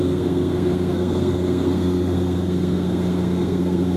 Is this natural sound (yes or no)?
no